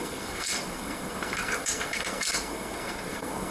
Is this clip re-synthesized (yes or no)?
yes